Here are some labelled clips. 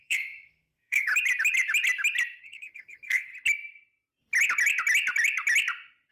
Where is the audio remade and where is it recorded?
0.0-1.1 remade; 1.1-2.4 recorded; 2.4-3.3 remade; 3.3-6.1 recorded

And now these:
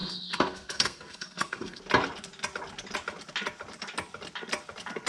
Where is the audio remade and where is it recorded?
0.0-1.8 remade; 1.8-5.1 recorded

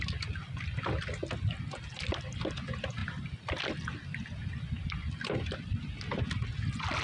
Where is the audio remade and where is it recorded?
0.0-7.0 recorded

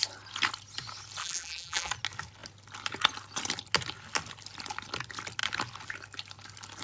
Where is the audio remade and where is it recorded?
0.0-1.2 recorded; 1.2-1.9 remade; 1.9-6.8 recorded